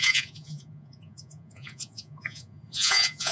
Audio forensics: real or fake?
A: fake